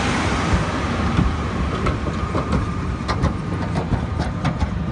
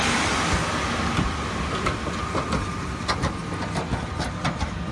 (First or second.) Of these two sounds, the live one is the second